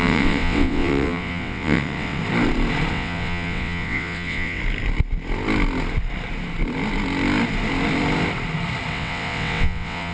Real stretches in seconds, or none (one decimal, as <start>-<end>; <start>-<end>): 2.2-2.9; 4.6-8.9